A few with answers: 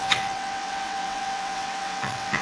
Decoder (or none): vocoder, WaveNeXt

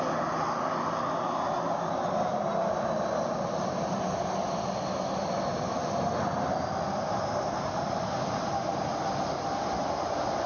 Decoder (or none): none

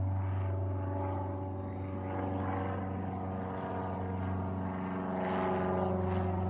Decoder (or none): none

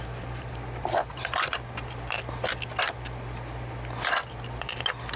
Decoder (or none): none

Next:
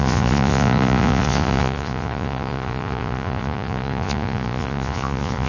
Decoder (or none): vocoder, Vocos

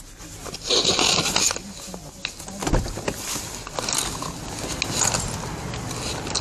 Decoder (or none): none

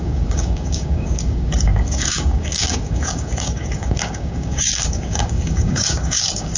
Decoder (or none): codec, DAC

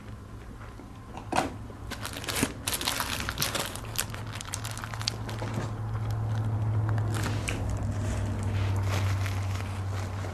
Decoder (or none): none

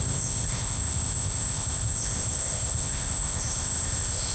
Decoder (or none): codec, ZipCodec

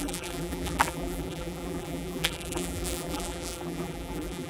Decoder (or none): vocoder, BigVGAN v2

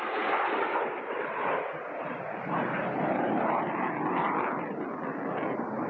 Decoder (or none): none